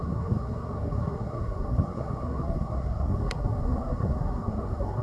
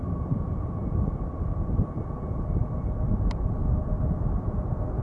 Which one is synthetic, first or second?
first